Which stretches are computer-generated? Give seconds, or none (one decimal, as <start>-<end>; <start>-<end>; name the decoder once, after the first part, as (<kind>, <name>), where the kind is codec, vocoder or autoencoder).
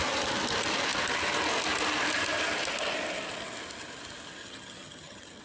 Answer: 4.4-5.4 (vocoder, HiFi-GAN)